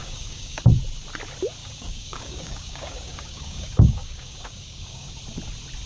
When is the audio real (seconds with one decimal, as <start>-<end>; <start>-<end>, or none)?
0.6-1.6; 5.1-5.9